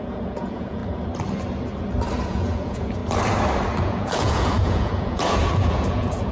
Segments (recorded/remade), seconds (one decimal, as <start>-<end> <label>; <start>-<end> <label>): 0.0-0.8 remade; 0.8-2.3 recorded; 2.3-3.0 remade; 3.0-3.8 recorded; 3.8-6.3 remade